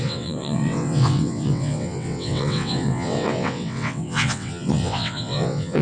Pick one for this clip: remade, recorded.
remade